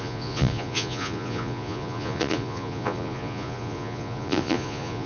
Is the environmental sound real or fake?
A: fake